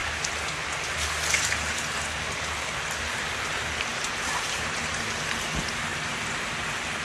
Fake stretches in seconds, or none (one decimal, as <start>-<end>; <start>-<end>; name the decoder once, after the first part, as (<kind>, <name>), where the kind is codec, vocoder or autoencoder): 3.9-5.0 (vocoder, BigVGAN v2); 5.9-6.6